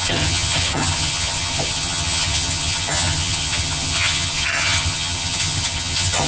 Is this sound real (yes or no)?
no